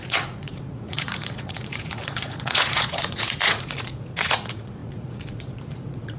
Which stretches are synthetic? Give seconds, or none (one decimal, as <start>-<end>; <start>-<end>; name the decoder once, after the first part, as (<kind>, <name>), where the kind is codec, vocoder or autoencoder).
0.0-6.2 (vocoder, Vocos)